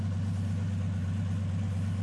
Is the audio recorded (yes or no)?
yes